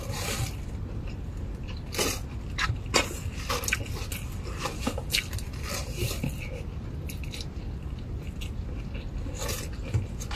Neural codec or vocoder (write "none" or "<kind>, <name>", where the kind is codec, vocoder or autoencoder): none